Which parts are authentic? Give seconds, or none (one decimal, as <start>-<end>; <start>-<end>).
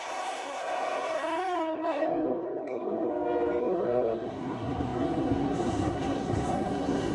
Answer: 3.1-3.6